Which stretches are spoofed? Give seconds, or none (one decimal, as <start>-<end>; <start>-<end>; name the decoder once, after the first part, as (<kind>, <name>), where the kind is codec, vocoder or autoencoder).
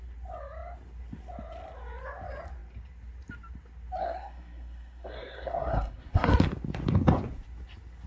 4.0-6.3 (codec, SNAC)